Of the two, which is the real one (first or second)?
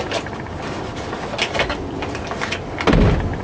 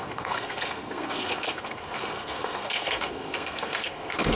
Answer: first